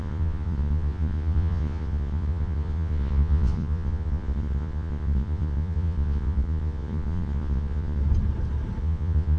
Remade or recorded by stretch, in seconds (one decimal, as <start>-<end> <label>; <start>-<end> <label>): 0.0-8.0 remade; 8.0-8.8 recorded; 8.8-9.4 remade